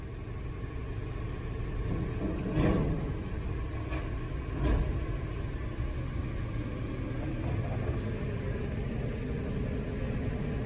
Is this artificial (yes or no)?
no